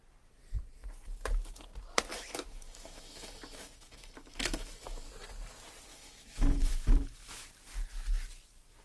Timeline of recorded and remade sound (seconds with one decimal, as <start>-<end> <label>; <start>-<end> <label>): 0.0-2.1 recorded; 2.1-5.1 remade; 5.1-5.9 recorded; 5.9-7.5 remade; 7.5-8.8 recorded